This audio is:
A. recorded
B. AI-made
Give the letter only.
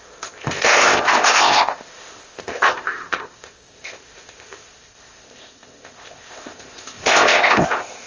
B